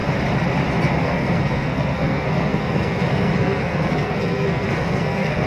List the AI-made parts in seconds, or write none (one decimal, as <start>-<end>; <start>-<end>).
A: 1.0-5.5